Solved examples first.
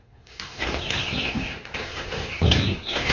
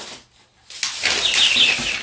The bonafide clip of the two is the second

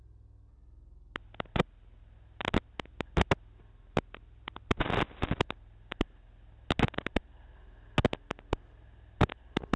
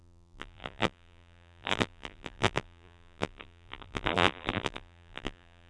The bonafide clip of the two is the first